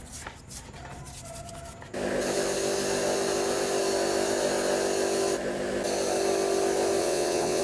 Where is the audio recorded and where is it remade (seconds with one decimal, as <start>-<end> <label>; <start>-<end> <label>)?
0.0-7.0 recorded; 7.0-7.6 remade